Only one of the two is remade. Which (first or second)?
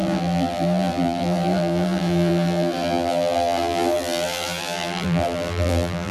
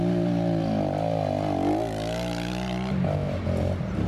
first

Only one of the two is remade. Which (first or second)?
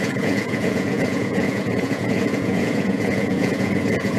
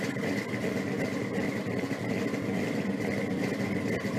first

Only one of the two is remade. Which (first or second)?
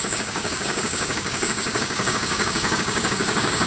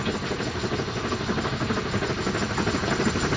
first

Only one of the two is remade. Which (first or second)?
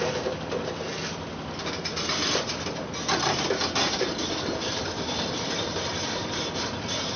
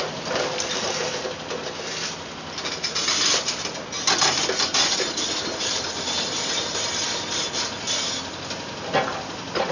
first